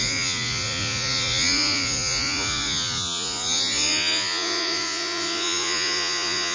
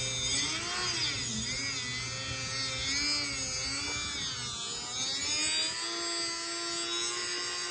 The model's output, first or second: first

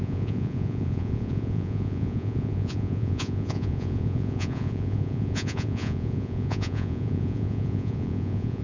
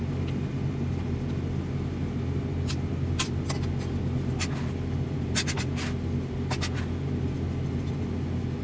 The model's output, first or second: first